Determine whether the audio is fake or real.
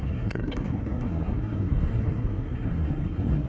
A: fake